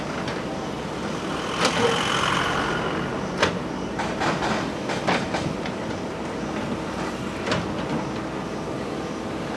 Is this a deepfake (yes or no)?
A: no